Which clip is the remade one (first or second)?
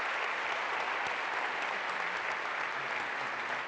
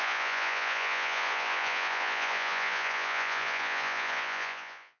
second